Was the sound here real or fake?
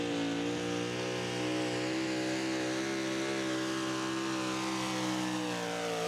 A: real